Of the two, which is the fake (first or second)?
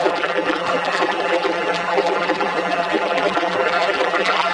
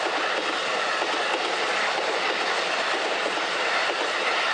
first